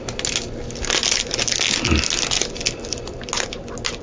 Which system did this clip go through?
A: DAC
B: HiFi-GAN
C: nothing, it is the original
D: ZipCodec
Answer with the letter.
C